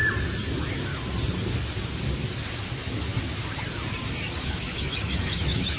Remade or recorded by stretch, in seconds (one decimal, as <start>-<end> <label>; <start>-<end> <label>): 0.0-0.5 recorded; 0.5-0.9 remade; 0.9-2.7 recorded; 2.7-3.1 remade; 3.1-4.4 recorded; 4.4-5.8 remade